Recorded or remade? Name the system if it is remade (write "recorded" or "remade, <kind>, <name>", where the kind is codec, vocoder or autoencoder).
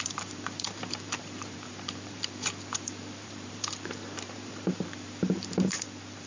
remade, vocoder, BigVGAN v2